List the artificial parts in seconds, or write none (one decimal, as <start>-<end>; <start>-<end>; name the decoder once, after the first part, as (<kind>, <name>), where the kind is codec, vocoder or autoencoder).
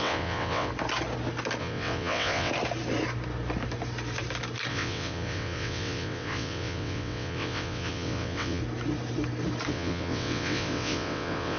0.0-0.7 (vocoder, WaveNeXt); 1.6-2.5; 4.7-8.6; 9.7-11.6